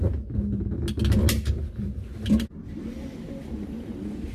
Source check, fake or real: real